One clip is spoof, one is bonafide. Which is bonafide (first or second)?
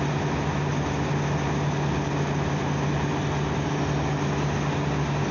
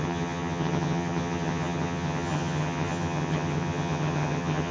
first